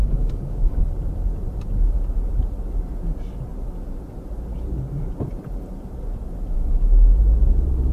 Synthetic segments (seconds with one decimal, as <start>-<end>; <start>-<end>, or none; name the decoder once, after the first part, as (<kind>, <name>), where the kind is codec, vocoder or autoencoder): 0.0-0.8 (codec, DAC)